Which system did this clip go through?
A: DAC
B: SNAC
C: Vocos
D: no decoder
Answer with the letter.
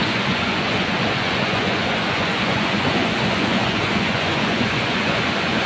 C